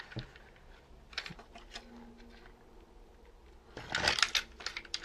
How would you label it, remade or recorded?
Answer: recorded